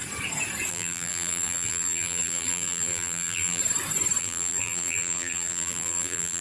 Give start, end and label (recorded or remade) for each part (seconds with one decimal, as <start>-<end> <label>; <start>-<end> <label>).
0.0-0.7 recorded; 0.7-3.6 remade; 3.6-4.2 recorded; 4.2-6.4 remade